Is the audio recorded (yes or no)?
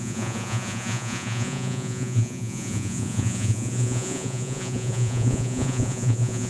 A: no